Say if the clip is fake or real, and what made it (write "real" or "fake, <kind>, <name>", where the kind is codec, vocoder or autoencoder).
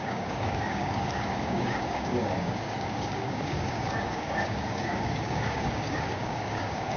fake, codec, DAC